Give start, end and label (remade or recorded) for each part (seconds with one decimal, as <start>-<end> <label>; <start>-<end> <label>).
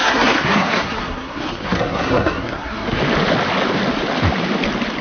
0.0-3.0 remade; 3.0-5.0 recorded